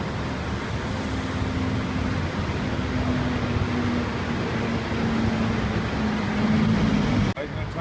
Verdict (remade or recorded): recorded